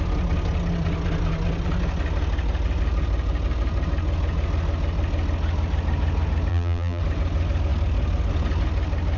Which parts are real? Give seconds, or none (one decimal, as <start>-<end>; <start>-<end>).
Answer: 0.0-6.5; 7.0-9.2